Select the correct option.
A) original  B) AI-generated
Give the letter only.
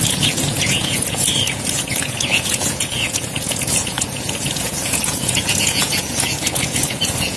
B